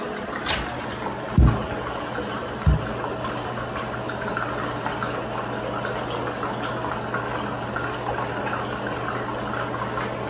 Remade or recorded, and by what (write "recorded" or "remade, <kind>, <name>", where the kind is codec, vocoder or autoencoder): recorded